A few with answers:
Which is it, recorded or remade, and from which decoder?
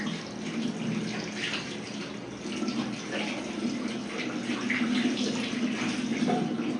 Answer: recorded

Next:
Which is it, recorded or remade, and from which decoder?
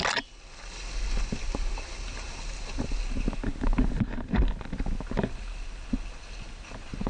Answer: recorded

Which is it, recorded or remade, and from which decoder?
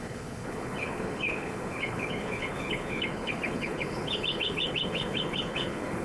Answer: remade, codec, HILCodec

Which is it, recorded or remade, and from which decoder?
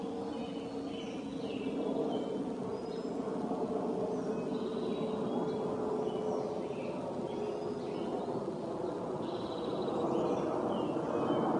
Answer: recorded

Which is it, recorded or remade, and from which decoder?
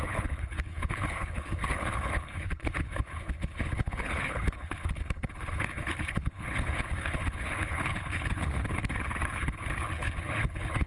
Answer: remade, codec, HILCodec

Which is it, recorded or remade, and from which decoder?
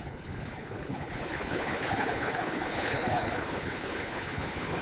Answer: remade, codec, HILCodec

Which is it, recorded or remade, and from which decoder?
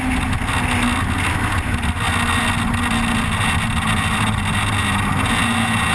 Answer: recorded